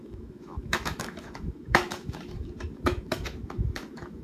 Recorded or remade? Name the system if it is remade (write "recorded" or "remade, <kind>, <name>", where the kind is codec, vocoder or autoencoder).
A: remade, autoencoder, DAC-VAE